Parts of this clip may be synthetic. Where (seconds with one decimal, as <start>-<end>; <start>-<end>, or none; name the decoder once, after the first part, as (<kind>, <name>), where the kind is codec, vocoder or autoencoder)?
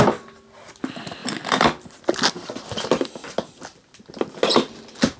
none